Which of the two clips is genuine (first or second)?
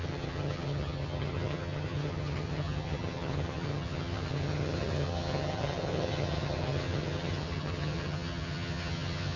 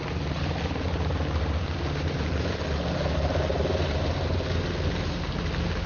second